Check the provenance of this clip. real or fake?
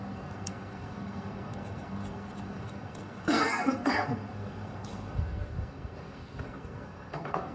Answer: fake